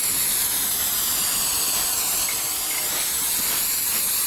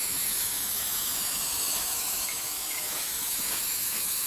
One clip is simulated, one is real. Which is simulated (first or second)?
second